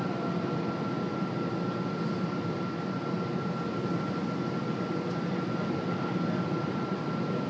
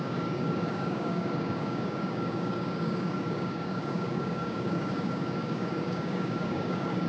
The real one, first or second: first